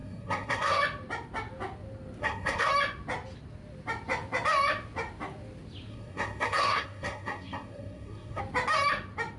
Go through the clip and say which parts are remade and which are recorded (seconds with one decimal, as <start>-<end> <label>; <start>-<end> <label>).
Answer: 0.0-0.8 remade; 0.8-2.2 recorded; 2.2-2.7 remade; 2.7-5.9 recorded; 5.9-8.4 remade; 8.4-9.4 recorded